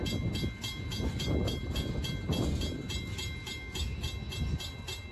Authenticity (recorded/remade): recorded